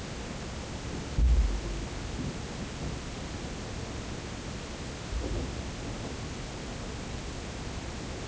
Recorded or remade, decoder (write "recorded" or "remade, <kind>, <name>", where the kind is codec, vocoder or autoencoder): recorded